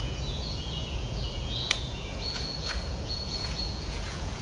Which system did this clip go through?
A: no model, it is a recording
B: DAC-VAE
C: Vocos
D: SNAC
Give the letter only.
C